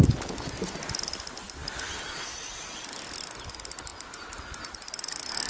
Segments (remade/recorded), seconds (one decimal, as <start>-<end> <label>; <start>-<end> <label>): 0.0-5.5 recorded